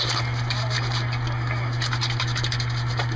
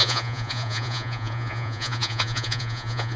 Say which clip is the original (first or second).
first